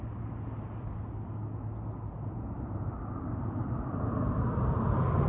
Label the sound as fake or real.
real